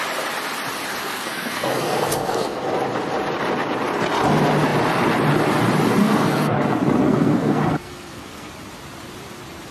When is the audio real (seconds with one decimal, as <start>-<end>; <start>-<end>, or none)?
0.0-1.0; 2.7-6.0; 6.5-7.0; 8.5-9.7